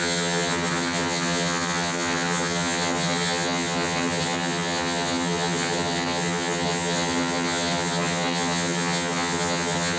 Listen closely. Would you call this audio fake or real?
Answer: fake